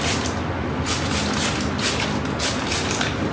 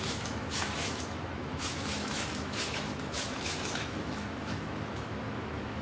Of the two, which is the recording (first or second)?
first